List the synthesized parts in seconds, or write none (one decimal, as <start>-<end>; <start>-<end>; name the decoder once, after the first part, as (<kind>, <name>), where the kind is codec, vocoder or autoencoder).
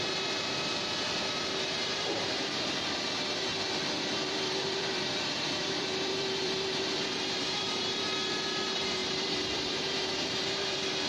0.0-3.5 (vocoder, BigVGAN v2); 4.0-11.1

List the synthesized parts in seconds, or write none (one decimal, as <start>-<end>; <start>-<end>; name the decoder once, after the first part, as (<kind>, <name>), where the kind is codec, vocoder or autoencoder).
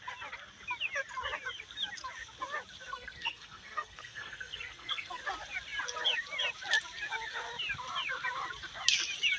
2.9-5.2 (codec, SNAC)